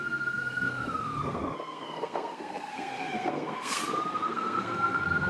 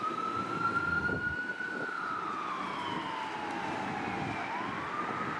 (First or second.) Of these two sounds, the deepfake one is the first